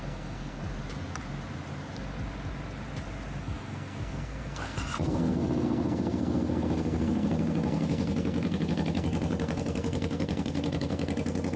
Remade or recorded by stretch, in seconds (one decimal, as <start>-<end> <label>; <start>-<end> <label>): 0.0-0.6 remade; 0.6-3.4 recorded; 3.4-11.6 remade